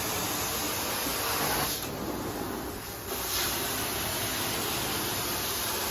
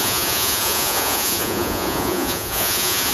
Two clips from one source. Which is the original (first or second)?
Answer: first